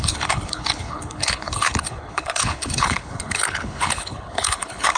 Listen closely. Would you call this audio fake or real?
fake